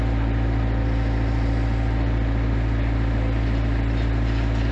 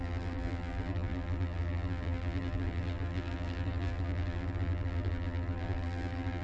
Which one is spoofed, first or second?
second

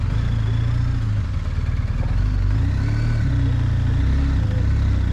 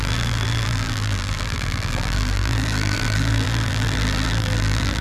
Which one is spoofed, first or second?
second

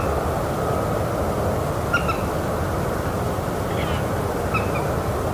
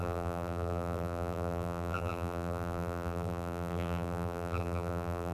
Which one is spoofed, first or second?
second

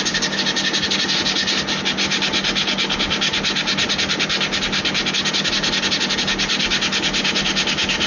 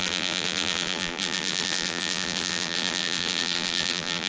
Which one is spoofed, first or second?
second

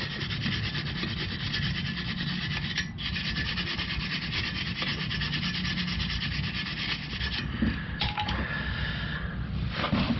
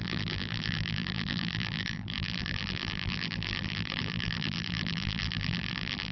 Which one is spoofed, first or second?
second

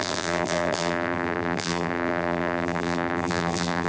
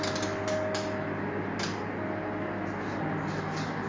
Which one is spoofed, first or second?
first